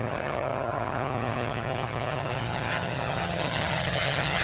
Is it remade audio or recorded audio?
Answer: remade